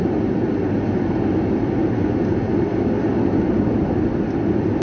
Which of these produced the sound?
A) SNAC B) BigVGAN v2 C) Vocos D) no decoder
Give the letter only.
D